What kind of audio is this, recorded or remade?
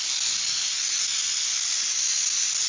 recorded